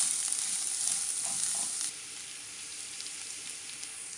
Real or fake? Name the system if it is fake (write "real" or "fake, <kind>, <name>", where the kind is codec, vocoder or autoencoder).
real